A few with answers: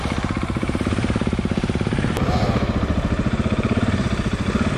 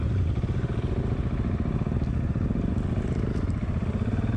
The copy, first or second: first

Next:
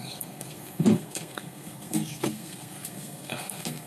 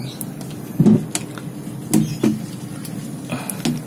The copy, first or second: first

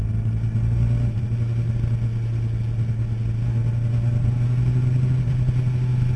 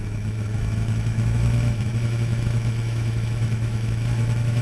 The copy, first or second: second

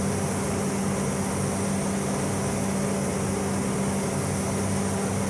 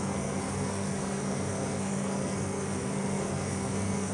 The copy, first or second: second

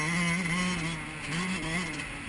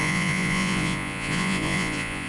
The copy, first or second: second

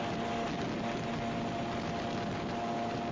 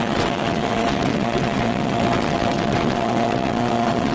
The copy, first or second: second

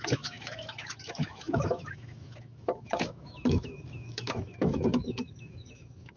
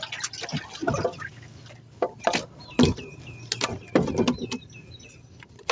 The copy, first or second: first